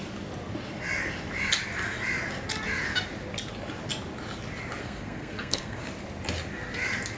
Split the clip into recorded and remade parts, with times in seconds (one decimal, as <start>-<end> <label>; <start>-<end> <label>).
0.0-4.8 recorded; 4.8-5.8 remade; 5.8-7.2 recorded